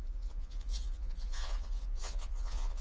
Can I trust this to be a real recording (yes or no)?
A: no